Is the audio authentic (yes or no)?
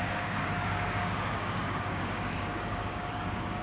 no